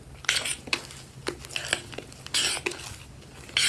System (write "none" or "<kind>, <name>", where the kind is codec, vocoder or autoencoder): none